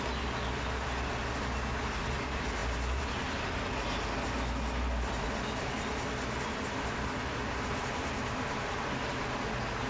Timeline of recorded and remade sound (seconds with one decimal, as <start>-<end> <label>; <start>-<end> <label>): 0.0-9.9 recorded